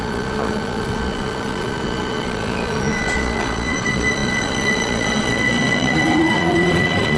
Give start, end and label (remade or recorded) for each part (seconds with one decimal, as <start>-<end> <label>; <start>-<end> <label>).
0.0-7.2 remade